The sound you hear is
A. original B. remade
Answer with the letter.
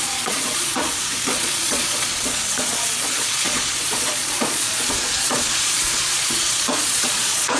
B